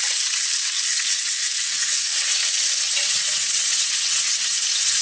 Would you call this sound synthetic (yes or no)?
yes